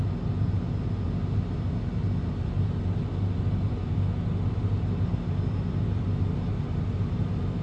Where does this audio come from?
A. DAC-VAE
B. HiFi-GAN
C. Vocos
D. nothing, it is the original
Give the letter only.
D